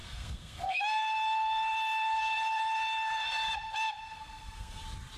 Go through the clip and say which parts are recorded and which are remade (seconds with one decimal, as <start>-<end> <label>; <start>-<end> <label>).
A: 0.0-0.8 remade; 0.8-4.1 recorded; 4.1-4.8 remade; 4.8-5.2 recorded